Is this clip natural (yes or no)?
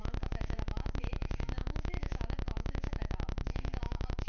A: no